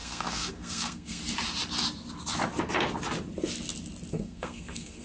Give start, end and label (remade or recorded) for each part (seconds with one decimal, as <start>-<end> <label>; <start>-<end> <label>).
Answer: 0.0-1.2 remade; 1.2-4.1 recorded; 4.1-5.0 remade